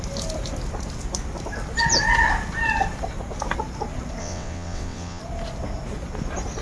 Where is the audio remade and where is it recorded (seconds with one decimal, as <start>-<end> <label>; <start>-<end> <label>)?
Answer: 0.0-4.2 recorded; 4.2-5.2 remade; 5.2-6.6 recorded